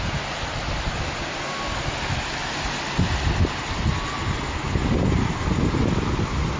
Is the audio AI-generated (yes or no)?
no